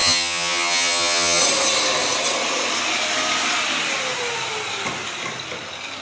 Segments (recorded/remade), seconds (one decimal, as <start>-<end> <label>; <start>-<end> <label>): 0.0-1.4 remade; 1.4-6.0 recorded